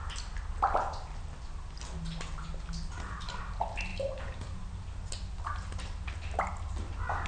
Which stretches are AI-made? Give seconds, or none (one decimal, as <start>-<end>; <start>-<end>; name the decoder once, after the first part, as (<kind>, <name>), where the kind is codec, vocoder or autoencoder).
3.9-5.1 (vocoder, BigVGAN v2)